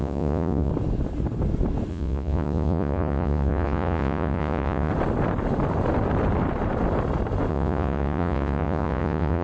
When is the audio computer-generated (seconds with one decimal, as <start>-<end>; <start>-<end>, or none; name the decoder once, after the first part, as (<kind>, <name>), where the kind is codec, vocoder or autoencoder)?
0.0-0.7 (vocoder, Vocos); 1.9-4.9; 7.5-9.4